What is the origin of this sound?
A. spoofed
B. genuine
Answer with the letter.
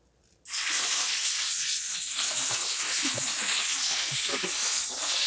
B